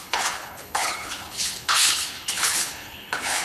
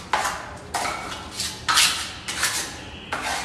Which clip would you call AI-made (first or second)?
first